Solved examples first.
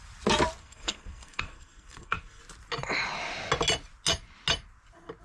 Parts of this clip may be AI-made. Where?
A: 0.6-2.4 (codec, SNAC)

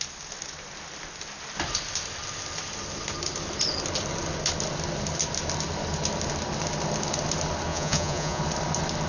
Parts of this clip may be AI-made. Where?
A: 7.7-8.4 (vocoder, Vocos)

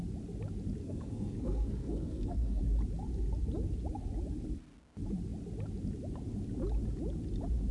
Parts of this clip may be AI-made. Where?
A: 0.8-2.6 (codec, SNAC)

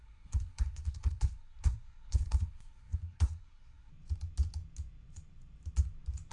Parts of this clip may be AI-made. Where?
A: 0.0-3.9 (codec, SNAC)

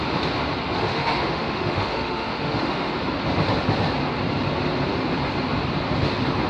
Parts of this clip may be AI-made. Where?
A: 0.8-2.9 (autoencoder, DAC-VAE)